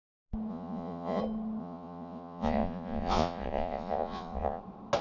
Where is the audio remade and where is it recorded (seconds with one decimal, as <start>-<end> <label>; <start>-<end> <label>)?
0.0-0.5 recorded; 0.5-1.2 remade; 1.2-1.6 recorded; 1.6-4.6 remade; 4.6-5.0 recorded